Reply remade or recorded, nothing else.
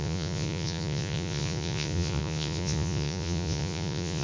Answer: remade